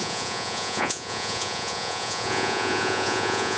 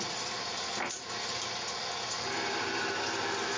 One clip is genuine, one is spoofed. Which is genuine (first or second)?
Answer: second